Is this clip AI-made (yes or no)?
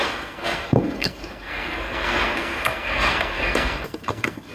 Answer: yes